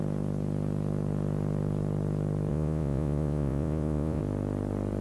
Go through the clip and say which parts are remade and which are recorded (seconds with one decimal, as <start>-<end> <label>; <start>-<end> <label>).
0.0-2.5 recorded; 2.5-4.2 remade; 4.2-5.0 recorded